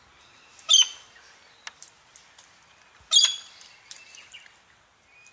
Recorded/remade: recorded